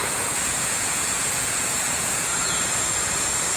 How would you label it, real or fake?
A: fake